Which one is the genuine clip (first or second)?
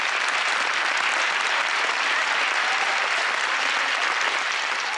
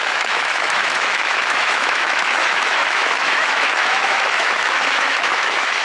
first